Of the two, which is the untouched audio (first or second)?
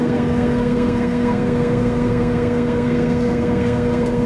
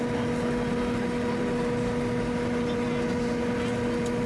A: second